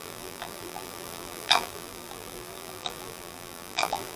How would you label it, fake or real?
fake